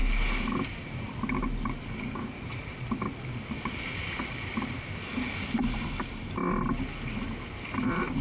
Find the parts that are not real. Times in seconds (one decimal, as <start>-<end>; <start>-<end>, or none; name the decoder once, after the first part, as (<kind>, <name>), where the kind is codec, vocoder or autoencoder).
none